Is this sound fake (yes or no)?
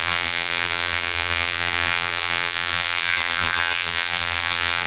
yes